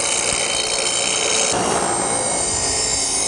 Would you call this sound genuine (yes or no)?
yes